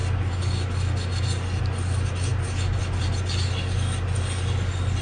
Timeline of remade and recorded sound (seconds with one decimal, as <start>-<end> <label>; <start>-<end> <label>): 0.0-5.0 recorded